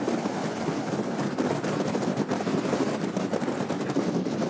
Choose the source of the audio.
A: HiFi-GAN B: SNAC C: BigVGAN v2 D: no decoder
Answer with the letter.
D